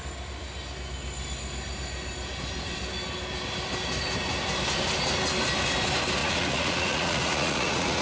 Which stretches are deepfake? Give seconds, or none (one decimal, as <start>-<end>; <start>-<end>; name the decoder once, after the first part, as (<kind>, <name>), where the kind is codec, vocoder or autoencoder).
6.2-8.0 (vocoder, Vocos)